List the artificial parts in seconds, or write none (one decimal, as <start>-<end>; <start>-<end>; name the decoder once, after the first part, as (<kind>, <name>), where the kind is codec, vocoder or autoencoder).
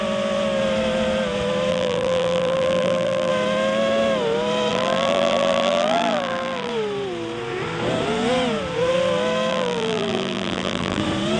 1.7-3.3 (vocoder, BigVGAN v2); 4.7-6.7; 9.5-11.0